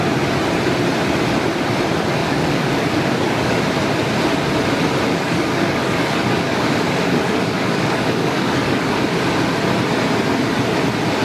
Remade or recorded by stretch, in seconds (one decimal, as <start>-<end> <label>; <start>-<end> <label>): 0.0-2.2 recorded; 2.2-3.6 remade; 3.6-5.1 recorded; 5.1-9.0 remade; 9.0-11.2 recorded